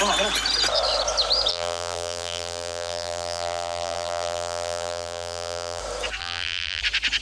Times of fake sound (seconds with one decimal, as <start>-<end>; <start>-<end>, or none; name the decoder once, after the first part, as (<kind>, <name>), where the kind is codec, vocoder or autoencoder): 1.5-5.8 (vocoder, BigVGAN v2); 6.2-6.8